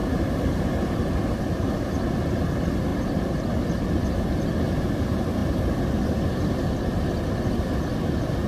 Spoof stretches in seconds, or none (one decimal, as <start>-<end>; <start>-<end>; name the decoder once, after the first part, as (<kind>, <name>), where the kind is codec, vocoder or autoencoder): 0.0-1.4 (vocoder, BigVGAN v2); 2.9-3.5; 5.4-7.0